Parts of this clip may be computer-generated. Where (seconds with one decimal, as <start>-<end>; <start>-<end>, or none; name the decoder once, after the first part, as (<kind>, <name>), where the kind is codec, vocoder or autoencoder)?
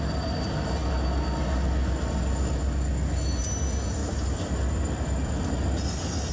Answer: 4.0-6.3 (vocoder, BigVGAN v2)